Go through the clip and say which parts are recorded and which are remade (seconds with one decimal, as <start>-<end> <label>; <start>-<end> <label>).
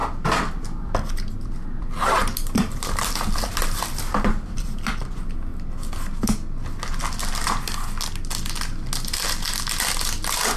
0.0-5.0 remade; 5.0-10.6 recorded